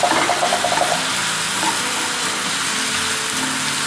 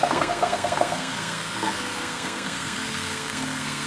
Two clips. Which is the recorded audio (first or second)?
first